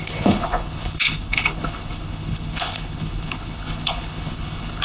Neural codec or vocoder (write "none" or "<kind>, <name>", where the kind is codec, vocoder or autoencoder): codec, HILCodec